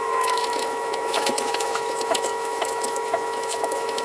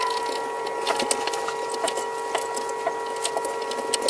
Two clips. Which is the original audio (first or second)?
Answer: second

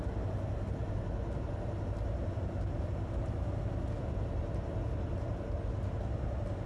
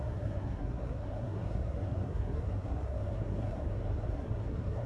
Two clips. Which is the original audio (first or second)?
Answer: first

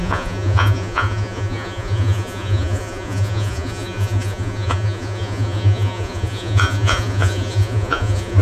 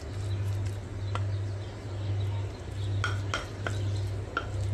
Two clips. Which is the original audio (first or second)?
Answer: second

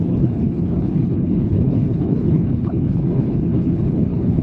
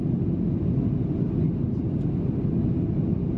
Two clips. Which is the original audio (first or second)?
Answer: second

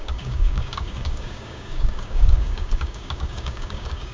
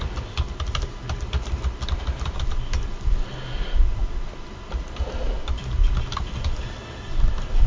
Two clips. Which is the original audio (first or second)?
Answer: second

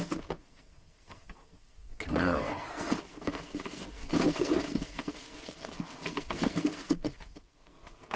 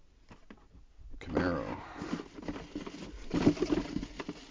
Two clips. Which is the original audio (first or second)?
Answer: second